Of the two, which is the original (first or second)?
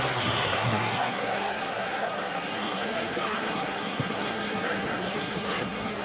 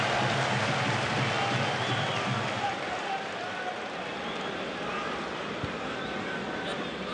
second